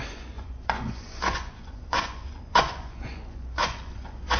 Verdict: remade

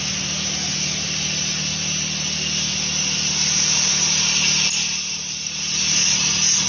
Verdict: recorded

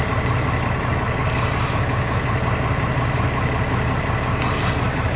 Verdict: recorded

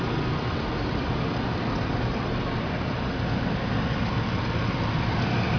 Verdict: recorded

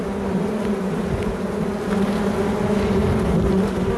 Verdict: recorded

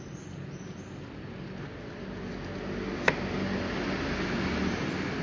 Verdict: recorded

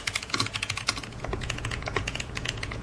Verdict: remade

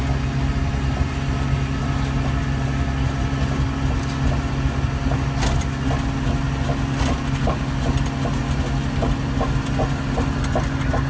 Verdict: recorded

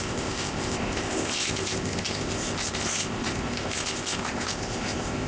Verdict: remade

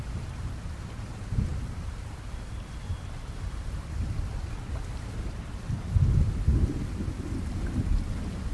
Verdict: recorded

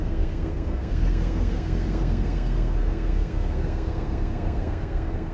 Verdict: remade